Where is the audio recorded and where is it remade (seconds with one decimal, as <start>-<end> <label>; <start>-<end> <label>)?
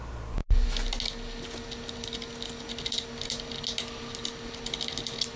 0.0-5.4 recorded